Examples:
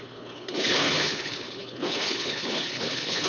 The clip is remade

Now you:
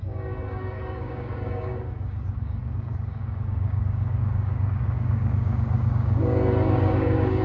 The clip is remade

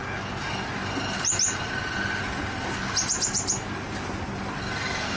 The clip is recorded